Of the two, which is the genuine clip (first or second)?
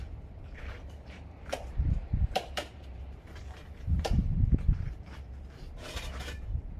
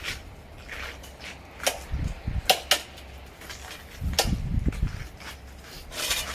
second